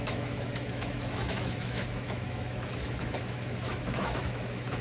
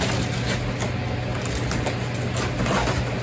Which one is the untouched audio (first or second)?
second